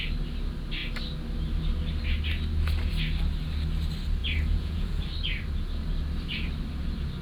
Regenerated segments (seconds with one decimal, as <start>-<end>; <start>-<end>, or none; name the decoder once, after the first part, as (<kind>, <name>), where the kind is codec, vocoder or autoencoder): 4.2-5.0 (vocoder, Vocos)